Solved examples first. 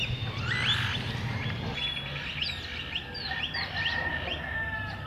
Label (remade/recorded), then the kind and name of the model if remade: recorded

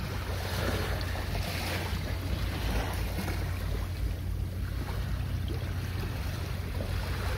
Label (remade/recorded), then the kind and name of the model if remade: recorded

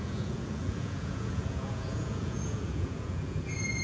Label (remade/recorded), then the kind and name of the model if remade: remade, vocoder, Vocos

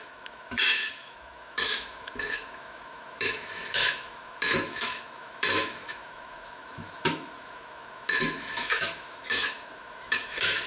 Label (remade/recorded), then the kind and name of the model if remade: remade, autoencoder, DAC-VAE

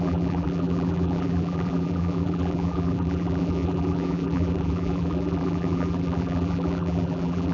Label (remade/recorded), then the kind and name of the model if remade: remade, vocoder, BigVGAN v2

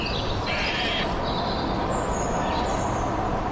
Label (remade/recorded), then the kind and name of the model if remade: recorded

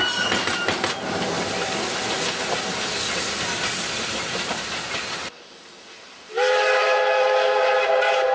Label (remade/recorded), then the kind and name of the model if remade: recorded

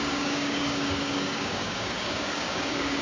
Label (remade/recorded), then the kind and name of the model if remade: remade, codec, DAC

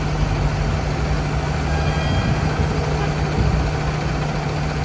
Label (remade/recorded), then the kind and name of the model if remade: recorded